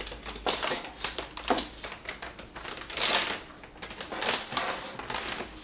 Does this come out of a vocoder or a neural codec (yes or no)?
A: no